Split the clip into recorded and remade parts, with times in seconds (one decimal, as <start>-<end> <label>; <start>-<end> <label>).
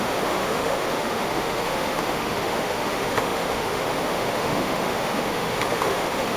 0.0-6.4 remade